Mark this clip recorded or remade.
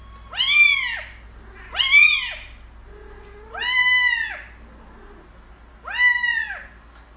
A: recorded